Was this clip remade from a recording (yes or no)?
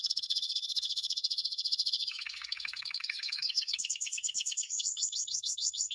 yes